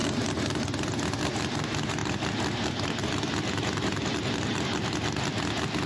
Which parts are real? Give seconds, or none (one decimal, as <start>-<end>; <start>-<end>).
0.0-5.9